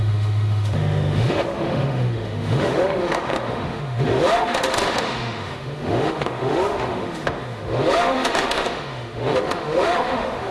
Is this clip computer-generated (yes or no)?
yes